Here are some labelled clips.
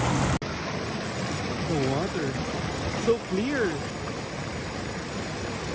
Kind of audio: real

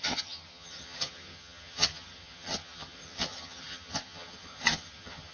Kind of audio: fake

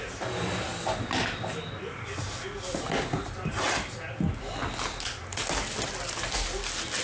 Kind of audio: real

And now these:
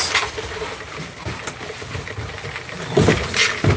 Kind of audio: real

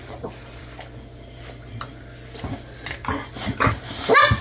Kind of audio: real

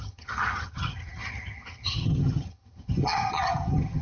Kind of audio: fake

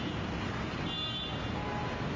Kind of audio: real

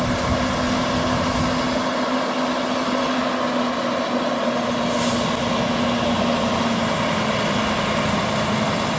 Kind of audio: real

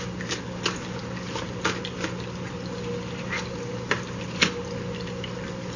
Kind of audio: real